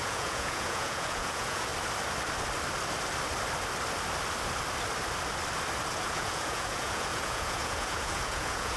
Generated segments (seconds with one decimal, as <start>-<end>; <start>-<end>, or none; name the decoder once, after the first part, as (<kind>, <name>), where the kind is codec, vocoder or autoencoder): 0.0-1.7 (vocoder, Vocos); 5.9-8.8